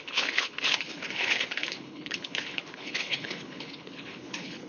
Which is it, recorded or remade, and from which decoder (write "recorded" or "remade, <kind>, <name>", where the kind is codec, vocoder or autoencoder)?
remade, codec, HILCodec